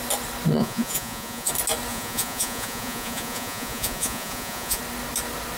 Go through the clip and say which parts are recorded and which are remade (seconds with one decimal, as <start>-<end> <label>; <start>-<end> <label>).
0.0-0.6 recorded; 0.6-1.5 remade; 1.5-1.9 recorded; 1.9-4.8 remade; 4.8-5.6 recorded